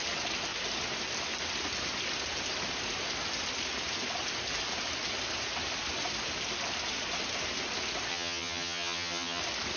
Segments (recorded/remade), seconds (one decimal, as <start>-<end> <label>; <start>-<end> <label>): 0.0-8.1 recorded; 8.1-9.4 remade; 9.4-9.8 recorded